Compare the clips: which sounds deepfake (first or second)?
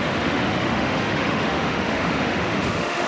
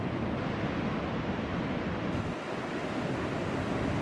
first